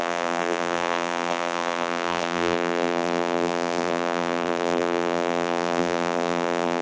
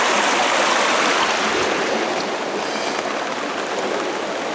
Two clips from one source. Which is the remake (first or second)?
first